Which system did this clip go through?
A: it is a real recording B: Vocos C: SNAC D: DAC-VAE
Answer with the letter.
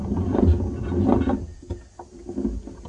A